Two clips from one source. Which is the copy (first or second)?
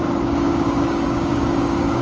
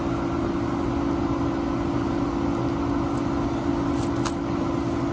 first